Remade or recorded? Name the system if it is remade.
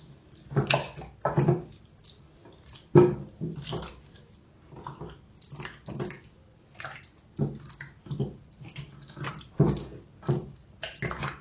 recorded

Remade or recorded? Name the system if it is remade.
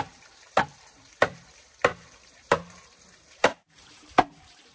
remade, vocoder, BigVGAN v2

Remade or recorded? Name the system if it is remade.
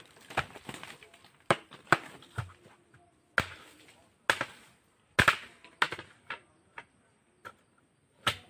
recorded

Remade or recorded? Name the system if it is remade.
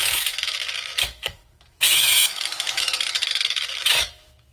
remade, autoencoder, DAC-VAE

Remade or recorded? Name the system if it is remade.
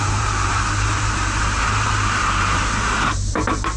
remade, vocoder, BigVGAN v2